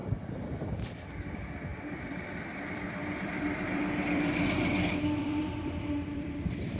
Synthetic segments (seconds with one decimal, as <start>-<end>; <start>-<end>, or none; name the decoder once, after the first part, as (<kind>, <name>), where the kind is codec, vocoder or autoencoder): 0.0-6.8 (vocoder, BigVGAN v2)